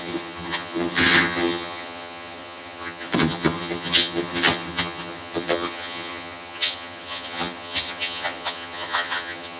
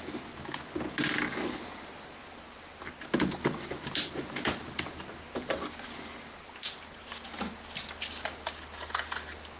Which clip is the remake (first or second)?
first